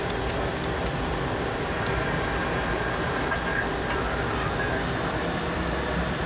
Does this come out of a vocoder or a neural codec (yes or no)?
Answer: no